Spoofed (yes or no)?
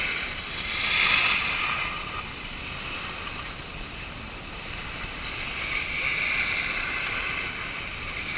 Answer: no